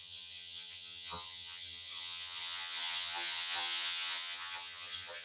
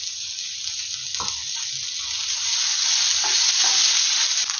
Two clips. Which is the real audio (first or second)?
second